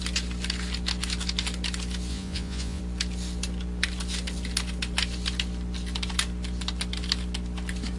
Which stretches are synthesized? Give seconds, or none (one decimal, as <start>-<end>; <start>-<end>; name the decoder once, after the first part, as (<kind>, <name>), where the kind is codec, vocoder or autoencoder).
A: 2.1-2.8 (vocoder, Vocos)